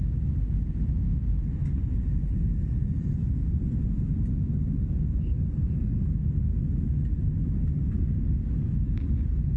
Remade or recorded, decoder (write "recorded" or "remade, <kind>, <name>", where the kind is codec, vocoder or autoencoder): recorded